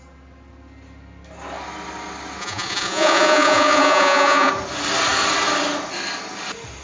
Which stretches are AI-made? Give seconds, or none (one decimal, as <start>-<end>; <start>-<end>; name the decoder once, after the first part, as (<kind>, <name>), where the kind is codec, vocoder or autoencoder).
2.4-4.5 (vocoder, Vocos)

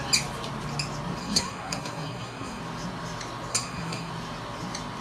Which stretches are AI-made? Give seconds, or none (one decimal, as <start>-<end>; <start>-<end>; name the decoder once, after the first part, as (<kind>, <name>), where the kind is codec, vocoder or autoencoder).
1.2-2.6 (codec, SNAC); 3.5-4.1

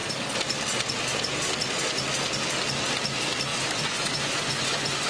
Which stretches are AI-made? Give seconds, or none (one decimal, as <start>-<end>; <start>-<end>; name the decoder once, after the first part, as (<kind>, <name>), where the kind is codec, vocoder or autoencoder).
3.5-5.1 (vocoder, Vocos)